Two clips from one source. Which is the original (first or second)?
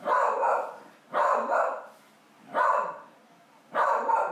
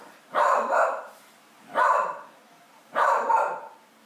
first